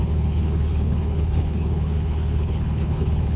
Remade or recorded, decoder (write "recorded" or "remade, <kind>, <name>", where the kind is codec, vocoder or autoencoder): remade, codec, HILCodec